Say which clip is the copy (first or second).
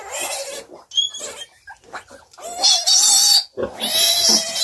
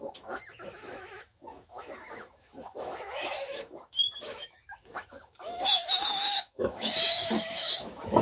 second